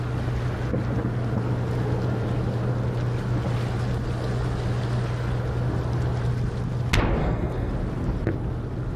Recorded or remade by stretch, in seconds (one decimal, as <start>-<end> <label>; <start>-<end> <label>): 0.0-7.2 recorded; 7.2-7.7 remade; 7.7-9.0 recorded